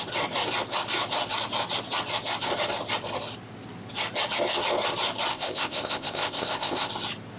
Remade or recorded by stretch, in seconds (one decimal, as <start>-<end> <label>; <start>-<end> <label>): 0.0-5.3 recorded; 5.3-6.9 remade; 6.9-7.4 recorded